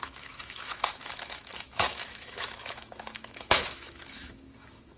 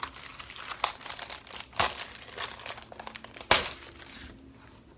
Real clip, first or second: second